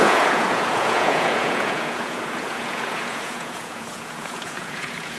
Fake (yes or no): yes